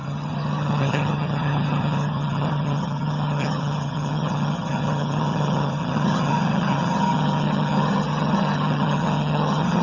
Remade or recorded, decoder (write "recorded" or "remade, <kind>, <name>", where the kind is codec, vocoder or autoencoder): remade, vocoder, HiFi-GAN